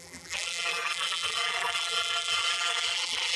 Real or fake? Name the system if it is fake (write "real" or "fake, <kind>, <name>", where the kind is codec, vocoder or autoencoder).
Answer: fake, vocoder, BigVGAN v2